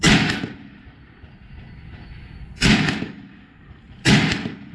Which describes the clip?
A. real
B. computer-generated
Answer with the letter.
B